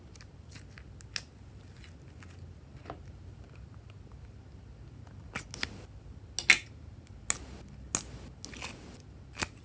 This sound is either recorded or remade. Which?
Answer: recorded